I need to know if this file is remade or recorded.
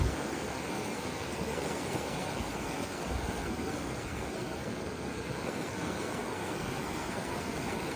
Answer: remade